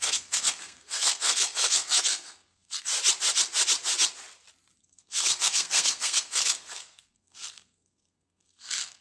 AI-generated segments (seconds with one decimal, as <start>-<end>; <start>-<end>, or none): 0.0-2.9; 4.8-9.0